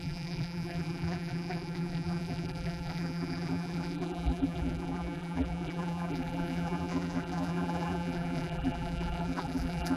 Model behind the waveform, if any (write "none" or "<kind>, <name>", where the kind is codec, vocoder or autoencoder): vocoder, BigVGAN v2